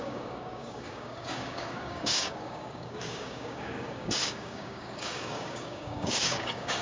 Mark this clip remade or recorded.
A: remade